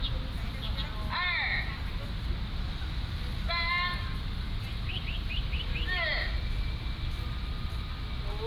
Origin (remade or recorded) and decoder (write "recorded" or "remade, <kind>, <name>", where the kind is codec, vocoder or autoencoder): recorded